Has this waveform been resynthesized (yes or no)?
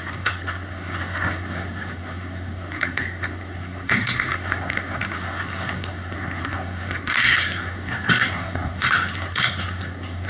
yes